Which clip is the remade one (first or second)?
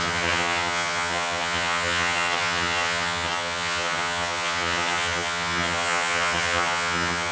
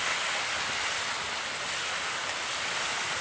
first